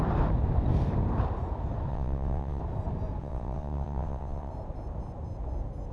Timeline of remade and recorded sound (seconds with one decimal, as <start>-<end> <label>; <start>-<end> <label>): 0.0-1.9 recorded; 1.9-2.6 remade; 2.6-3.2 recorded; 3.2-4.5 remade; 4.5-5.9 recorded